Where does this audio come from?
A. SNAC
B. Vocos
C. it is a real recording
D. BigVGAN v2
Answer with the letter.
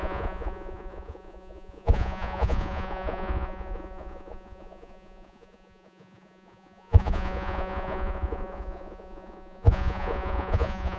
B